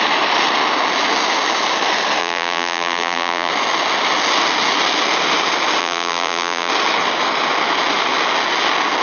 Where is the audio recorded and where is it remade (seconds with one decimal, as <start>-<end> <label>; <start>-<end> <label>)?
0.0-2.2 recorded; 2.2-3.5 remade; 3.5-5.8 recorded; 5.8-6.7 remade; 6.7-9.0 recorded